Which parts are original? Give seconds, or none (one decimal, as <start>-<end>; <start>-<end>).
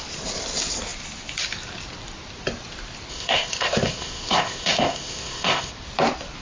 0.0-3.1; 5.7-6.4